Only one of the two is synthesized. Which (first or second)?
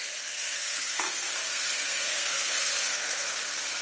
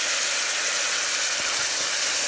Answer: first